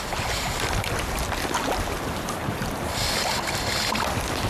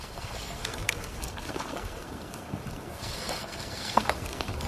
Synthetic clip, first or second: second